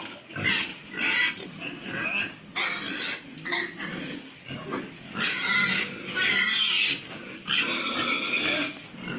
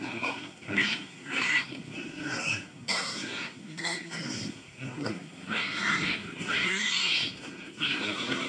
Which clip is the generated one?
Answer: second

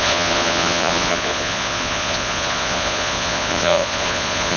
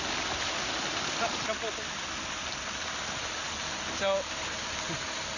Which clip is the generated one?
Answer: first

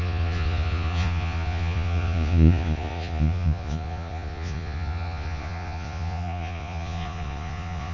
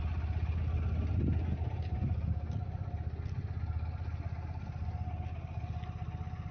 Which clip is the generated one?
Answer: first